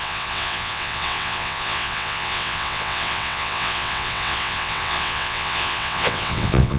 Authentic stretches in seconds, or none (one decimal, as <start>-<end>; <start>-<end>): none